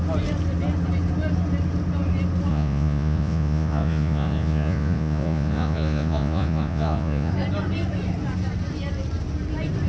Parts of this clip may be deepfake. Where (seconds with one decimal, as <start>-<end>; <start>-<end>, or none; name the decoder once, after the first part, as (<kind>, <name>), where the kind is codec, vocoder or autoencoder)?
2.5-7.3 (vocoder, Vocos)